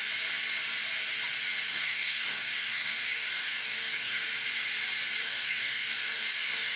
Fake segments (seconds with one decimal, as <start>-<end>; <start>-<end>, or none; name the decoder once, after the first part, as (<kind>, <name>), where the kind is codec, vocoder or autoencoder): 1.7-4.3 (codec, DAC); 5.2-6.8

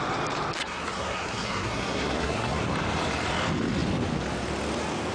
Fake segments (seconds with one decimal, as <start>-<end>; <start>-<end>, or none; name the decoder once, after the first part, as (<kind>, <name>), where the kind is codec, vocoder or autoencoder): 0.6-2.6 (codec, SNAC)

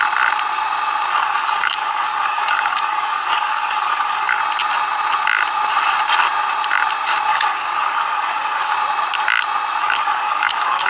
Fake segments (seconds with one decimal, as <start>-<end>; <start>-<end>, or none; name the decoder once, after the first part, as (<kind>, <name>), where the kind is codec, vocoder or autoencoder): 1.1-4.4 (codec, DAC); 7.3-8.7; 9.8-10.9

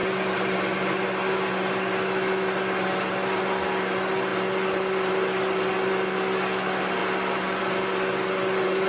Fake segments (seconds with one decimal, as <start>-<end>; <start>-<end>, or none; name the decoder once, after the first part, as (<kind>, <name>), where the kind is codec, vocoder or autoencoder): none

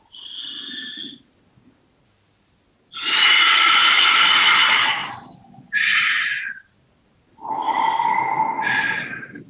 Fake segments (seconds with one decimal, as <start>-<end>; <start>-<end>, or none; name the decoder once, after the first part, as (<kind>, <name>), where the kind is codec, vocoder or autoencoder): 5.0-6.2 (vocoder, BigVGAN v2)